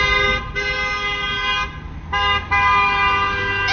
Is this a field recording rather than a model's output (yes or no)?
yes